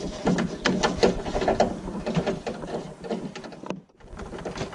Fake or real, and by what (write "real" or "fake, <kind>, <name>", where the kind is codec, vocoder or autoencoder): real